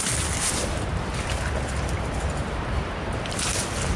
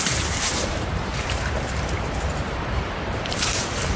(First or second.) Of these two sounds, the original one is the first